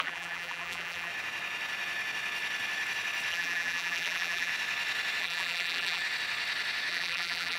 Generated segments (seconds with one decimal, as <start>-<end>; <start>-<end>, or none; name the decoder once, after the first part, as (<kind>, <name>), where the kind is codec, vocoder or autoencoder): 0.0-1.1 (vocoder, BigVGAN v2); 3.3-4.5; 5.2-6.0; 6.9-7.6